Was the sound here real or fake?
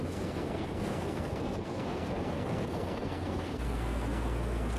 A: fake